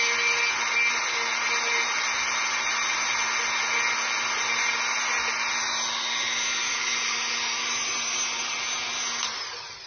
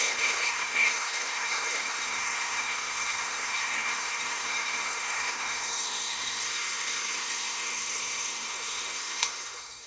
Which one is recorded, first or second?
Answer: first